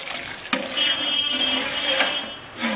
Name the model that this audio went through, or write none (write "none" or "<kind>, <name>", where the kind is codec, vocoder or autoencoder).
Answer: none